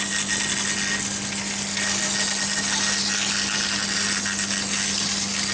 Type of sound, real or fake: real